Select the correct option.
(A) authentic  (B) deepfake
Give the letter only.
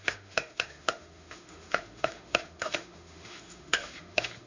B